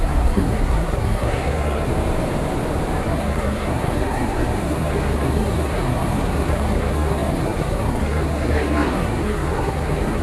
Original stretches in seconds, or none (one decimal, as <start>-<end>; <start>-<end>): 1.9-3.0